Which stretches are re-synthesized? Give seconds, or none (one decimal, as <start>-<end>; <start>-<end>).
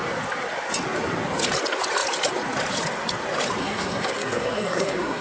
3.6-5.2